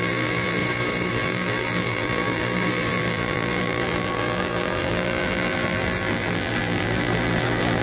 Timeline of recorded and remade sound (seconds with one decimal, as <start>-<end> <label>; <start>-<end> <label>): 0.0-0.6 remade; 0.6-1.1 recorded; 1.1-7.8 remade